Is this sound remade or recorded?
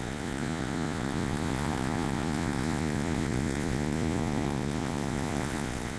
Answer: remade